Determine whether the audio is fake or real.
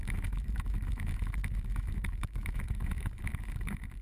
fake